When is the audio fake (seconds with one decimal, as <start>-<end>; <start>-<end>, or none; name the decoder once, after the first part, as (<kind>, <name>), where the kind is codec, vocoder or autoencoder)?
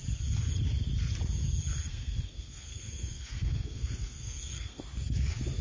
1.9-4.8 (codec, SNAC)